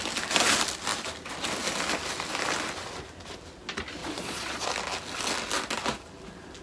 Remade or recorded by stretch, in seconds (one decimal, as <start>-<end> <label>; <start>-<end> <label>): 0.0-4.0 recorded; 4.0-4.7 remade; 4.7-6.6 recorded

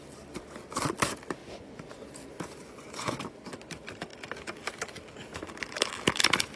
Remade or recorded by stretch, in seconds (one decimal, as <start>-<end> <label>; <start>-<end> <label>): 0.0-1.4 recorded; 1.4-2.0 remade; 2.0-2.6 recorded; 2.6-3.3 remade; 3.3-6.6 recorded

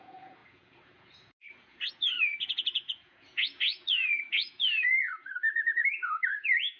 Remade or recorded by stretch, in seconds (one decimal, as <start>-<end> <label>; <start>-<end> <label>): 0.0-6.8 remade

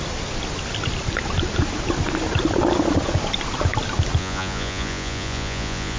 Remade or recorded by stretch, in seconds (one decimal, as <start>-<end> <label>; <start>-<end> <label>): 0.0-4.2 recorded; 4.2-6.0 remade

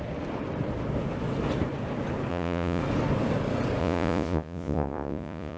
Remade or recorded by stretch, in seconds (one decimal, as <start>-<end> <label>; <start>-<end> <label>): 0.0-2.3 recorded; 2.3-2.8 remade; 2.8-3.8 recorded; 3.8-5.6 remade